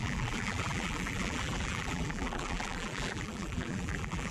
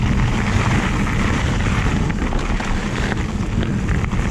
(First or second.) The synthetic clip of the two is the first